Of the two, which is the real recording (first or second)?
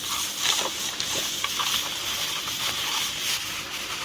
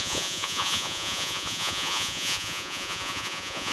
first